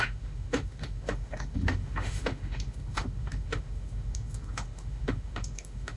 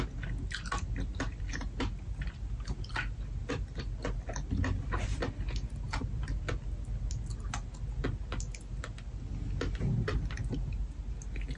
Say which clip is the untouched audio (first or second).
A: second